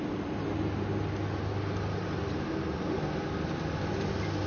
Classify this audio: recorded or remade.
recorded